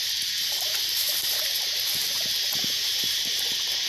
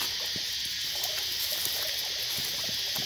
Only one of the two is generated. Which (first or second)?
first